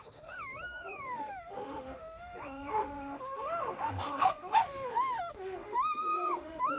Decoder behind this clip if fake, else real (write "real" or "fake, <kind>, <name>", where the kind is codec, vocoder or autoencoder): fake, autoencoder, DAC-VAE